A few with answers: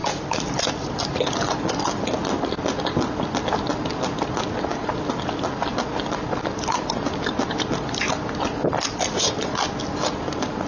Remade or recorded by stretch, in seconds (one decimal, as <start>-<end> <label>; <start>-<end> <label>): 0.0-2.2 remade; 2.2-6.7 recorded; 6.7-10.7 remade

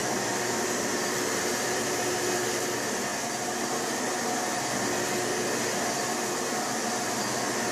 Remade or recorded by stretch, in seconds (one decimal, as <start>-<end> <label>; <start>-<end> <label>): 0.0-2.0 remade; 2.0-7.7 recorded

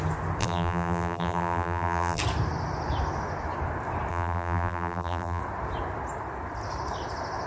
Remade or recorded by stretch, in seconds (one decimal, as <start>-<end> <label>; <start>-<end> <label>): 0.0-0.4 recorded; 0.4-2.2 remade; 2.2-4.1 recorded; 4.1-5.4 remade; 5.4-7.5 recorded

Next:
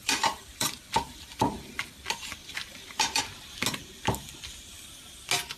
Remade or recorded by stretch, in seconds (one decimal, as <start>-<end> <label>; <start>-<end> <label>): 0.0-1.7 remade; 1.7-2.4 recorded; 2.4-3.2 remade; 3.2-5.6 recorded

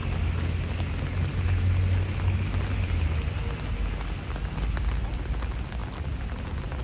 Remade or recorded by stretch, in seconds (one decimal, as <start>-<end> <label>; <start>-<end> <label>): 0.0-6.8 recorded